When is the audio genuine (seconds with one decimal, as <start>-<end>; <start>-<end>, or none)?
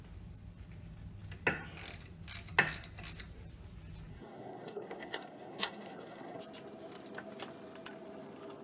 0.0-4.1; 6.4-8.6